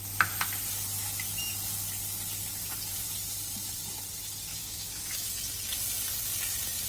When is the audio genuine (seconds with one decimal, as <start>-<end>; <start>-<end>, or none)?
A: 0.0-4.5; 5.3-6.9